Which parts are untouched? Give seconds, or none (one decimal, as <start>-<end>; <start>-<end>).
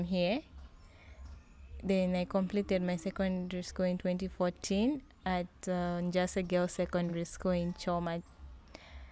0.0-1.0; 3.7-9.1